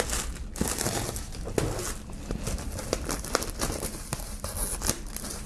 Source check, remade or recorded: recorded